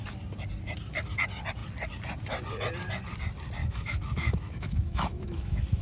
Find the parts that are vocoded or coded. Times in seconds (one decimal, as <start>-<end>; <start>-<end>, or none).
3.6-5.8